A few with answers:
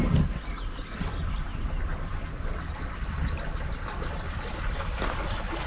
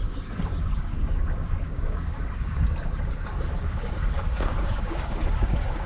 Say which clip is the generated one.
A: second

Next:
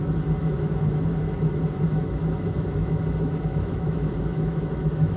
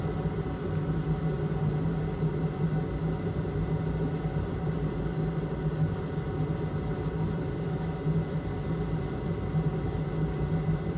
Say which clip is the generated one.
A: first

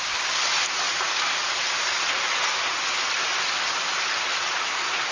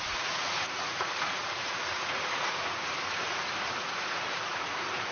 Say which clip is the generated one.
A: second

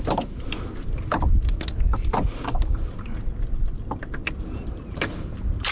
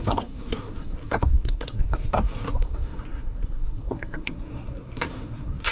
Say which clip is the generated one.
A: second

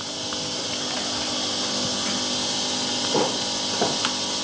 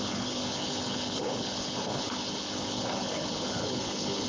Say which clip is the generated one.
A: second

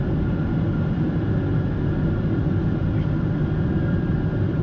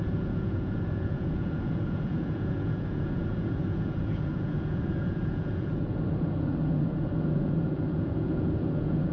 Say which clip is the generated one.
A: second